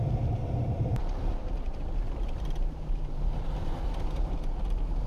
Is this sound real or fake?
fake